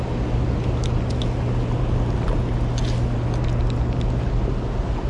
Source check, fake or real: real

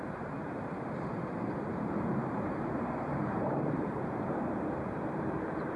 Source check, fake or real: fake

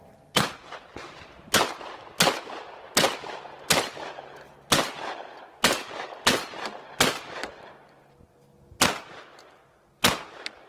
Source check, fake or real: real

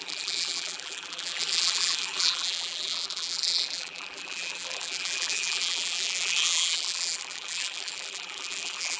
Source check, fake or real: fake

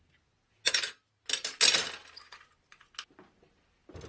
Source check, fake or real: real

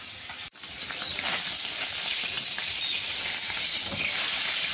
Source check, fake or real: fake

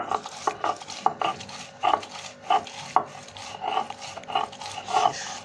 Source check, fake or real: real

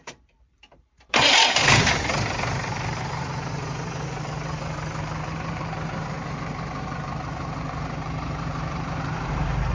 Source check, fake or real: fake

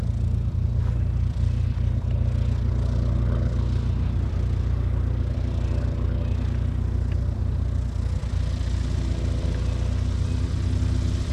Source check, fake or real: real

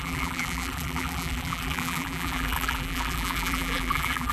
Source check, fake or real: fake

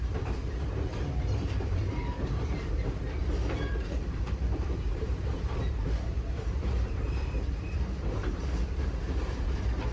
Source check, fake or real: fake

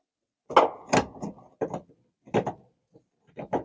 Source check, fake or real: real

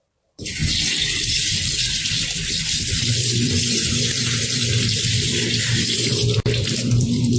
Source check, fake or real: fake